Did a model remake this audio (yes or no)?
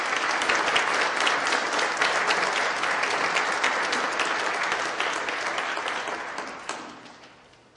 no